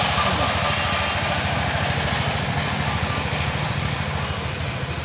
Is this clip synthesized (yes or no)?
no